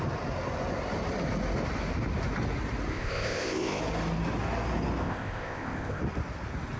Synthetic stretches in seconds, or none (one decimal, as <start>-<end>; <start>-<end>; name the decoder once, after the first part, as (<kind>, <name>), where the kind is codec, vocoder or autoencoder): 2.9-3.8 (codec, ZipCodec); 5.0-6.0